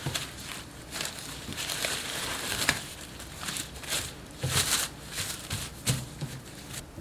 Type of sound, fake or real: fake